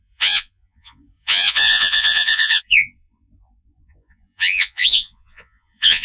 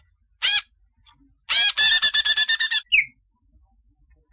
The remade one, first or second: first